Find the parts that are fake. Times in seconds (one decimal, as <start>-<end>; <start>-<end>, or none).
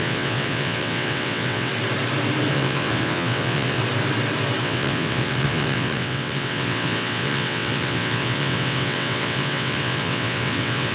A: 0.0-1.7; 2.5-3.8; 4.6-10.9